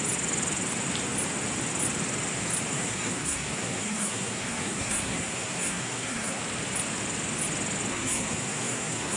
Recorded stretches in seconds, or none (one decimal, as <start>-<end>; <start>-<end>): 0.0-2.7; 6.4-7.9